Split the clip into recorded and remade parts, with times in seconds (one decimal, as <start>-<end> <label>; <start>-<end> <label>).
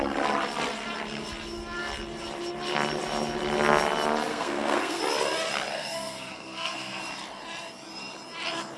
0.0-4.3 recorded; 4.3-5.0 remade; 5.0-5.7 recorded; 5.7-7.0 remade; 7.0-8.8 recorded